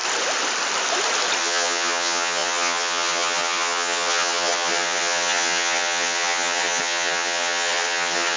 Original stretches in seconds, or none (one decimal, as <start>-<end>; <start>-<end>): 0.0-1.4